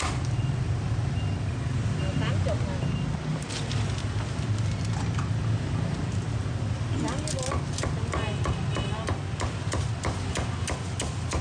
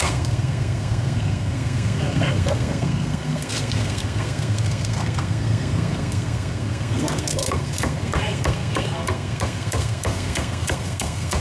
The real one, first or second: first